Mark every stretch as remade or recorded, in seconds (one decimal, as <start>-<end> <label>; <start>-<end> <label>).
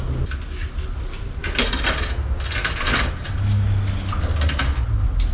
0.0-5.3 recorded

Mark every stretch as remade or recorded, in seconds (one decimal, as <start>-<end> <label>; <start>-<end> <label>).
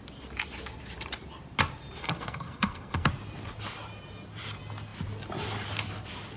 0.0-2.0 recorded; 2.0-3.1 remade; 3.1-6.4 recorded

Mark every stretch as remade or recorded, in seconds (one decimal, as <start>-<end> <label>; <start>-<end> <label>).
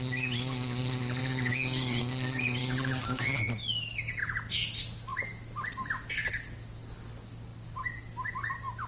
0.0-1.2 recorded; 1.2-2.0 remade; 2.0-2.6 recorded; 2.6-4.2 remade; 4.2-8.9 recorded